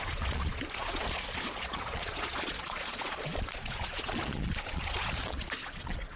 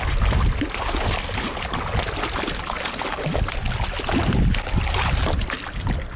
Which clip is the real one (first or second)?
second